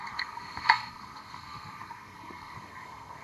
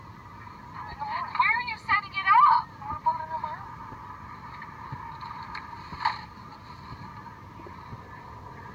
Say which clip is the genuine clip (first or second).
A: second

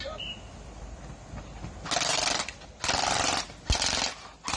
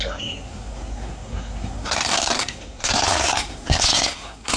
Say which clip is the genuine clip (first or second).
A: first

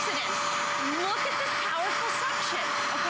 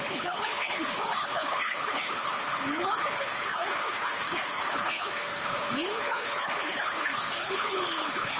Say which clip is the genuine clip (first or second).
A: first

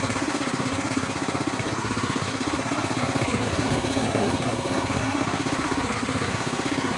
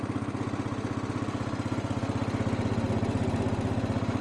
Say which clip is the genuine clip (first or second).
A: second